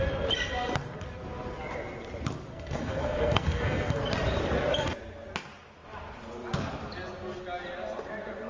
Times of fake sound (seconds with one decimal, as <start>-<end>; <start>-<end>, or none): 2.5-4.0